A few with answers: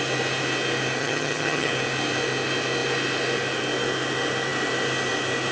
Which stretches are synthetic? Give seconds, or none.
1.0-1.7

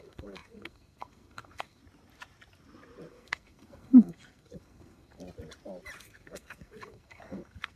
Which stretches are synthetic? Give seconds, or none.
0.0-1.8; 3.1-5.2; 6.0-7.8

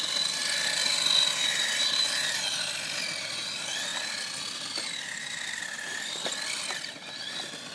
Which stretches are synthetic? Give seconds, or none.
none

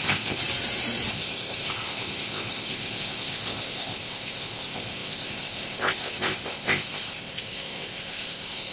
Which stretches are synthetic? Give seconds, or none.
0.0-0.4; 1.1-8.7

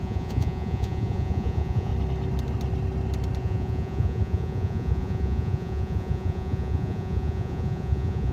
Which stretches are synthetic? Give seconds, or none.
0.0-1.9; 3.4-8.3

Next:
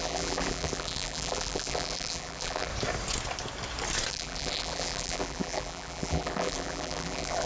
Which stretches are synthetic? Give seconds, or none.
0.0-2.7; 4.1-7.5